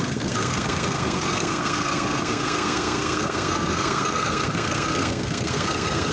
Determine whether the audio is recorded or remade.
remade